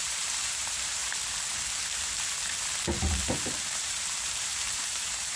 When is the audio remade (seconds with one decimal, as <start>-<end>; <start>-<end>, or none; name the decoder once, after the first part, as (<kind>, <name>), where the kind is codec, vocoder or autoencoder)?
0.0-1.0 (vocoder, BigVGAN v2); 3.6-5.4